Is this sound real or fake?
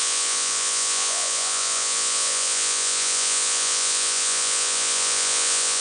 fake